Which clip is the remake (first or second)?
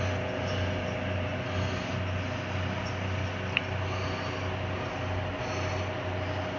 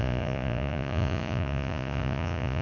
second